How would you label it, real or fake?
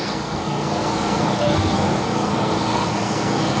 fake